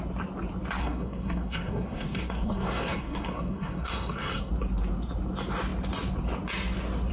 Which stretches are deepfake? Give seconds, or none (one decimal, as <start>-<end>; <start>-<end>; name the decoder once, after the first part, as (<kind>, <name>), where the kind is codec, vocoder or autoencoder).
0.8-4.5 (codec, SNAC)